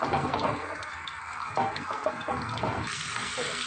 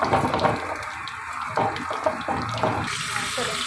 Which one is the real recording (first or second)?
second